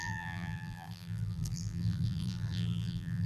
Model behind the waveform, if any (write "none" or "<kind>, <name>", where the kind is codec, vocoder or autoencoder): vocoder, BigVGAN v2